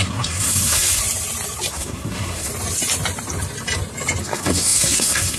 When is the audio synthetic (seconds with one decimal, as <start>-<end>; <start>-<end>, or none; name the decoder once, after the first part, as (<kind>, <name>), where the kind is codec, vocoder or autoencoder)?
0.0-1.0 (codec, SNAC); 1.7-2.5; 4.2-5.4